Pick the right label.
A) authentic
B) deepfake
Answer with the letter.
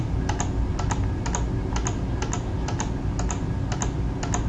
A